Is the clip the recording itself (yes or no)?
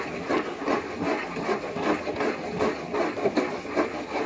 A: yes